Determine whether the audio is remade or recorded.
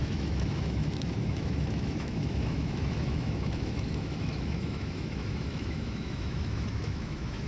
remade